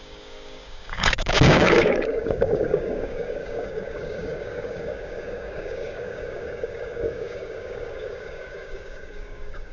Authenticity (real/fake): fake